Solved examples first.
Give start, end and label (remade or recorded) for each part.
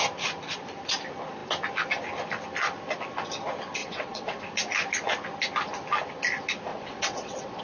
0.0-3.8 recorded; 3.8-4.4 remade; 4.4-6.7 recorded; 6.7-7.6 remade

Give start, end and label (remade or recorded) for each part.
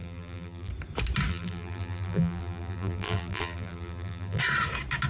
0.0-0.7 remade; 0.7-1.3 recorded; 1.3-4.4 remade; 4.4-5.1 recorded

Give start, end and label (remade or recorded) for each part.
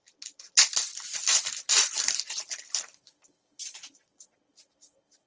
0.0-3.6 recorded; 3.6-4.5 remade; 4.5-5.3 recorded